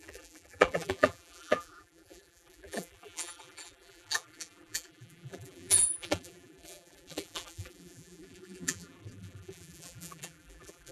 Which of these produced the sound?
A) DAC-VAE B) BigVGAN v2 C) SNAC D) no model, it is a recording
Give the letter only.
B